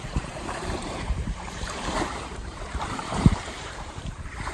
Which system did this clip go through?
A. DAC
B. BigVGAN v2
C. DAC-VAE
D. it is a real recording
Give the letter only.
B